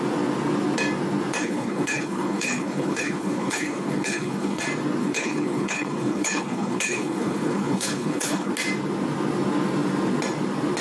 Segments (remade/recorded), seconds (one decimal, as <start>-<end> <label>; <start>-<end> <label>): 0.0-1.4 recorded; 1.4-4.6 remade; 4.6-5.0 recorded; 5.0-8.5 remade; 8.5-10.8 recorded